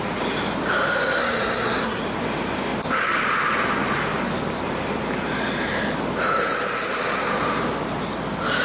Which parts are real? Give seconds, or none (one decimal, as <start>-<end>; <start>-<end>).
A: 0.0-1.2; 2.0-8.6